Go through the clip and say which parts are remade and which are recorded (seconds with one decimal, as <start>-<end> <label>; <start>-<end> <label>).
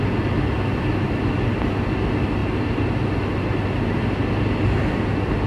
0.0-5.5 recorded